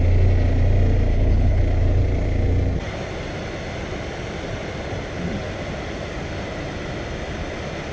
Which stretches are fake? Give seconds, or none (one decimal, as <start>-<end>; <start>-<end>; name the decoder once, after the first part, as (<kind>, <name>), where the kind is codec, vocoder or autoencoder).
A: 1.1-1.6 (codec, HILCodec)